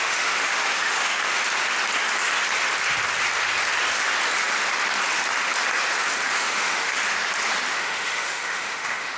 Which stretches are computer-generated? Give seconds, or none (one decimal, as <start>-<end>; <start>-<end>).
0.0-1.4; 6.3-6.9; 7.7-9.2